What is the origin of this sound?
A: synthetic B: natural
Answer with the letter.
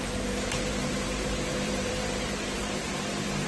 A